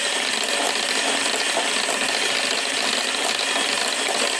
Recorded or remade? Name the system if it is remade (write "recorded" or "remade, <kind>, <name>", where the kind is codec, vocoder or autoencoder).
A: recorded